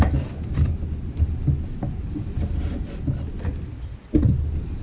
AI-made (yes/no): no